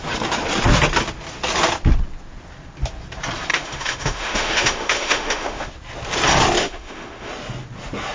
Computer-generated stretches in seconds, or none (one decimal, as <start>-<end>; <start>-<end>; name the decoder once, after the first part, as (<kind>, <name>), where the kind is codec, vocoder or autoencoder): 3.5-5.7 (autoencoder, DAC-VAE); 6.6-7.3